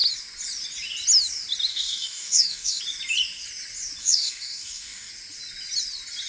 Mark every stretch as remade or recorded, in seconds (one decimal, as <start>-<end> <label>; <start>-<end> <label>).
0.0-1.7 recorded; 1.7-2.8 remade; 2.8-4.0 recorded; 4.0-5.1 remade; 5.1-6.3 recorded